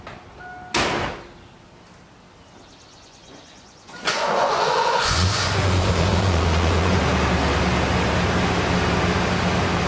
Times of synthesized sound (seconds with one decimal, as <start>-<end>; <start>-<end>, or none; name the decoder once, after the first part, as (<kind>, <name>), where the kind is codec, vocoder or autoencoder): 2.9-7.0 (vocoder, Vocos)

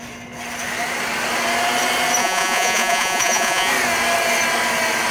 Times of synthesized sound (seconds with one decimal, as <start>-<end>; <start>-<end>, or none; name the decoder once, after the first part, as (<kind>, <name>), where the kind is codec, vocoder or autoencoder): 2.2-3.7 (vocoder, Vocos)

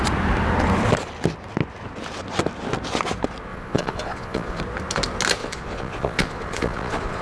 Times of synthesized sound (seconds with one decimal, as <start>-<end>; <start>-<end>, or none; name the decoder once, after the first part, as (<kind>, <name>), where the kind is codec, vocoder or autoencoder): 3.5-4.6 (vocoder, Vocos); 5.4-7.2

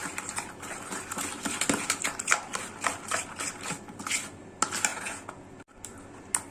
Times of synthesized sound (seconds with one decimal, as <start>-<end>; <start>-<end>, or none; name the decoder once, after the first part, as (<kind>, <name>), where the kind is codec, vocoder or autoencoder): 4.9-5.5 (vocoder, Vocos)

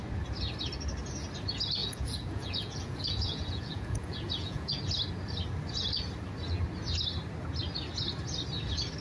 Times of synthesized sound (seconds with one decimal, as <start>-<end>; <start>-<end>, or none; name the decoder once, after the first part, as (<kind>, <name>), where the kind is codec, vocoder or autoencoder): 1.8-4.8 (vocoder, Vocos)

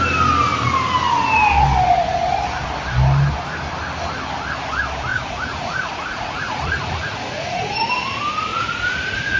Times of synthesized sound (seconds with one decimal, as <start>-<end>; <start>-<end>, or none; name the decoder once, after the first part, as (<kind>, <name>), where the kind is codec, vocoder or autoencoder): 5.1-7.9 (vocoder, Vocos); 8.5-9.4